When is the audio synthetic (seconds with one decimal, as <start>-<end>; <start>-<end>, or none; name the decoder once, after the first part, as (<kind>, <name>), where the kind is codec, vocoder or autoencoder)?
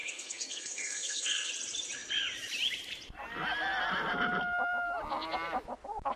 0.0-1.5 (codec, SNAC)